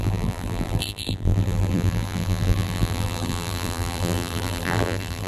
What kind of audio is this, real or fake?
fake